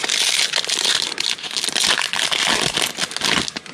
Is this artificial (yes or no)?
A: no